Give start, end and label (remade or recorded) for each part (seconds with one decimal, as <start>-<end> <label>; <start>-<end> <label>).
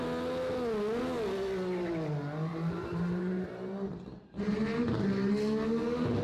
0.0-2.5 recorded; 2.5-5.3 remade; 5.3-6.2 recorded